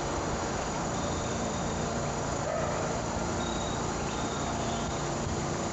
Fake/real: fake